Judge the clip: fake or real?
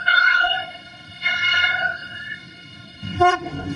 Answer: fake